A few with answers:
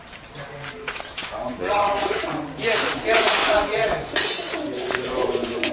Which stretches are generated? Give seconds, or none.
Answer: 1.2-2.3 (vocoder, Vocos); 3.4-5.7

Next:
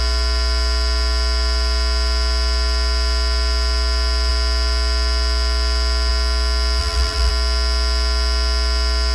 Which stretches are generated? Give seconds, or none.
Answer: 6.8-7.3 (vocoder, BigVGAN v2)